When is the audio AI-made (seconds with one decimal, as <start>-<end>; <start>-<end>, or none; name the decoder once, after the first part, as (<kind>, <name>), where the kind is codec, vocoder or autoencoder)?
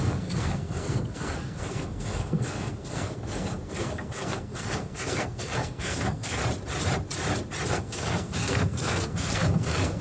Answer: 0.0-6.4 (codec, SNAC); 7.7-10.0